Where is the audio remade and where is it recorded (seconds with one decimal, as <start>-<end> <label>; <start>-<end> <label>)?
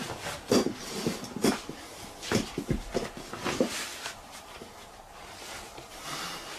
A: 0.0-6.6 recorded